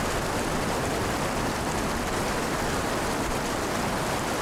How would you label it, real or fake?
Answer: real